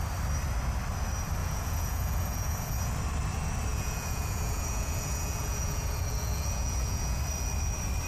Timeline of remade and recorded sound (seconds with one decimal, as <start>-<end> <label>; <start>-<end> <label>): 0.0-1.4 recorded; 1.4-2.9 remade; 2.9-3.7 recorded; 3.7-7.2 remade; 7.2-8.1 recorded

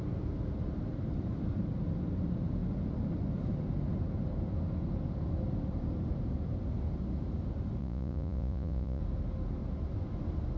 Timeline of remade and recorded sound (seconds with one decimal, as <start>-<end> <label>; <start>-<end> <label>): 0.0-7.8 recorded; 7.8-9.0 remade; 9.0-10.6 recorded

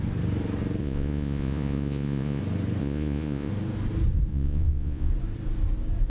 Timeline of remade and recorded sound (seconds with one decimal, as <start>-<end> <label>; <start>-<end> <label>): 0.0-0.8 recorded; 0.8-2.4 remade; 2.4-2.8 recorded; 2.8-3.5 remade; 3.5-4.3 recorded; 4.3-5.1 remade; 5.1-6.1 recorded

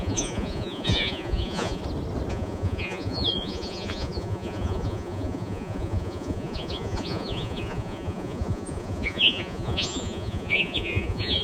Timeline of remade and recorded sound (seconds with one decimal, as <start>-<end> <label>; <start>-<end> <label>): 0.0-1.8 remade; 1.8-2.3 recorded; 2.3-11.4 remade

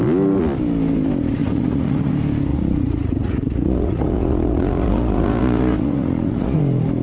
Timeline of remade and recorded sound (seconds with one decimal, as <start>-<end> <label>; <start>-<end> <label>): 0.0-1.4 recorded; 1.4-2.1 remade; 2.1-2.5 recorded; 2.5-6.6 remade; 6.6-7.0 recorded

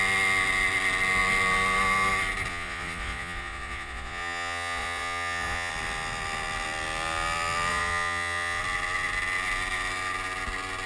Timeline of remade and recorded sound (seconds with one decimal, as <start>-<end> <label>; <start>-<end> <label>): 0.0-2.5 recorded; 2.5-5.7 remade; 5.7-7.7 recorded; 7.7-8.6 remade; 8.6-10.9 recorded

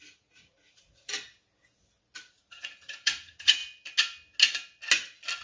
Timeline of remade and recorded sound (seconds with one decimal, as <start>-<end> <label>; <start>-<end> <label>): 0.0-1.1 remade; 1.1-2.3 recorded; 2.3-3.6 remade; 3.6-5.4 recorded